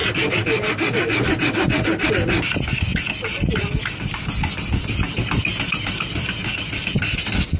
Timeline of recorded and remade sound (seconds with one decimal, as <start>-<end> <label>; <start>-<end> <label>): 0.0-7.6 recorded